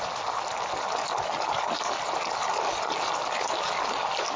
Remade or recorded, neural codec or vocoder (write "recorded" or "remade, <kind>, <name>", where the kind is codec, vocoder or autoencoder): recorded